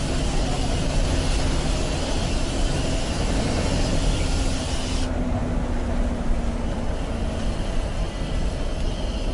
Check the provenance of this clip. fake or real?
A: real